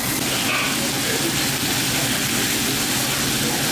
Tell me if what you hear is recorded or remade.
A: recorded